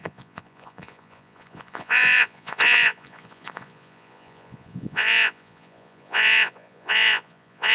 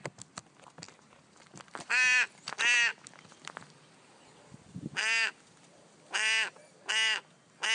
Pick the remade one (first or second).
first